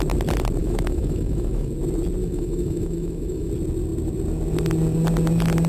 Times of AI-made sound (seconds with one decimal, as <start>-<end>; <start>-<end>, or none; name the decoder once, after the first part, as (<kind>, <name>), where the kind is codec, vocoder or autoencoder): 0.6-1.7 (autoencoder, DAC-VAE); 2.2-3.5